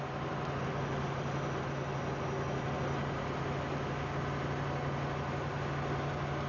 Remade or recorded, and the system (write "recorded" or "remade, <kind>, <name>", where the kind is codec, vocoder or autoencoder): recorded